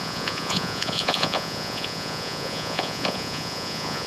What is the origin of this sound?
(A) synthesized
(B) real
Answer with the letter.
A